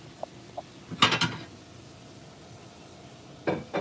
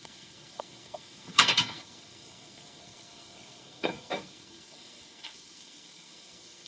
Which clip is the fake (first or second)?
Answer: second